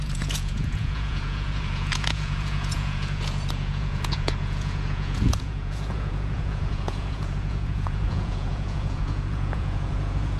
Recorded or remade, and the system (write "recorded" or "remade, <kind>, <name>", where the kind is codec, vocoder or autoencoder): remade, vocoder, Vocos